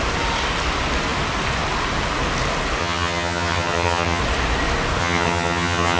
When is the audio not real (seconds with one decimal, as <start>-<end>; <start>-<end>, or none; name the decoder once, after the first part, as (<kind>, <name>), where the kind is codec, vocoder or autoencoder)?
2.8-4.2 (vocoder, HiFi-GAN); 5.0-6.0